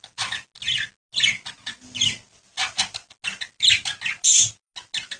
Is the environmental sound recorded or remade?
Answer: recorded